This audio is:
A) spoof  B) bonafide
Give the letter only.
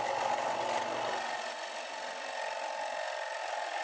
B